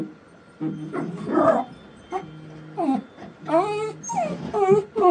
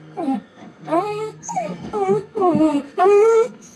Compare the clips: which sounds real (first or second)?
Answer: first